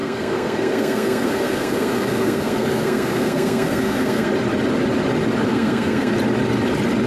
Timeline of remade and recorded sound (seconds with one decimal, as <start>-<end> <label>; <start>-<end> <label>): 0.0-4.3 remade; 4.3-5.5 recorded; 5.5-6.1 remade; 6.1-7.1 recorded